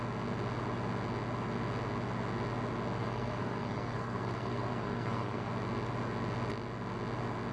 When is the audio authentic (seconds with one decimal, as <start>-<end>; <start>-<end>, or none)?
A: 0.0-3.0; 5.5-7.5